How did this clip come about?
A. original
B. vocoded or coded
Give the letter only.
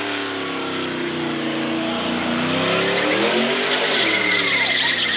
A